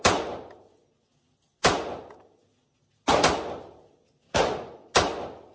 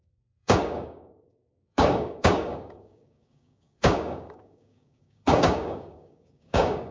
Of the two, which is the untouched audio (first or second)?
first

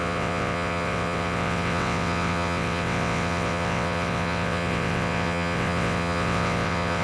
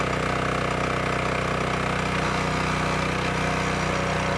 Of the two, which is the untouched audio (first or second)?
second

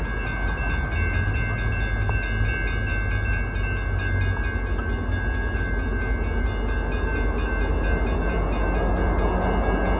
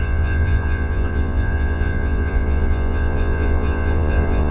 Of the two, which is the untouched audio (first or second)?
first